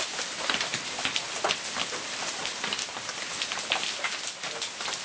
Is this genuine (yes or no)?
yes